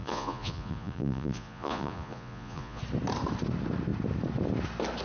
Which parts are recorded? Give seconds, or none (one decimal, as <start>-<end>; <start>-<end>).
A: 2.8-5.0